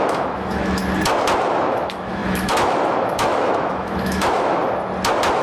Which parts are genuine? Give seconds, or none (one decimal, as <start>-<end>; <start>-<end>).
0.8-1.5; 4.6-5.4